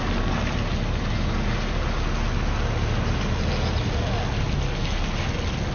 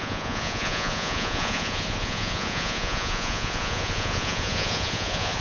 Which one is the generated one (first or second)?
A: second